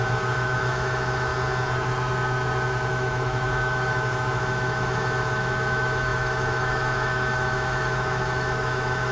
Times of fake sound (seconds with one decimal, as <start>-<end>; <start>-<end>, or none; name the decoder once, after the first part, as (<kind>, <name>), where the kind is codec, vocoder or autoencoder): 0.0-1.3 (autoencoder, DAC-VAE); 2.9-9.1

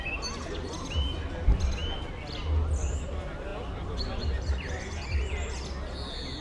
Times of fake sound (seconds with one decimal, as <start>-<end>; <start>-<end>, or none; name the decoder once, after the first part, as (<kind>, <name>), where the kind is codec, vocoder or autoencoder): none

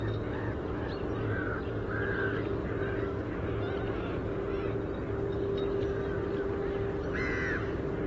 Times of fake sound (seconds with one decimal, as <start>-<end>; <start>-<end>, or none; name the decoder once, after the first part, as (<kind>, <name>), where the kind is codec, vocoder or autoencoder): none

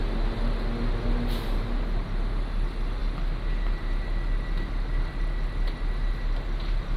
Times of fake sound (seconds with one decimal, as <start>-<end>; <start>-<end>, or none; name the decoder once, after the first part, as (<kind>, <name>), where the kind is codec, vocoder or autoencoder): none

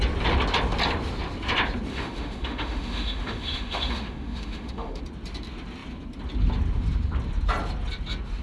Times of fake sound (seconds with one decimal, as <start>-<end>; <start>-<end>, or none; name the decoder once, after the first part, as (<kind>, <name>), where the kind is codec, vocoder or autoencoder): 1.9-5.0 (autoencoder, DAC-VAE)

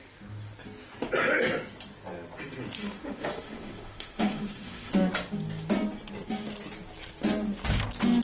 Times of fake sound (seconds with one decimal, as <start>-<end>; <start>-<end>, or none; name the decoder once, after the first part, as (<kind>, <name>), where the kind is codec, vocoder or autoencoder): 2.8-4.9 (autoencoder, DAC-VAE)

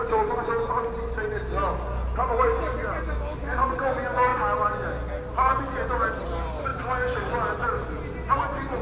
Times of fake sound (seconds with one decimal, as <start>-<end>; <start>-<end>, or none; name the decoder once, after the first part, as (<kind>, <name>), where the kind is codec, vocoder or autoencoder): none